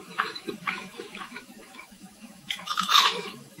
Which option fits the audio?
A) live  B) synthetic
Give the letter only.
B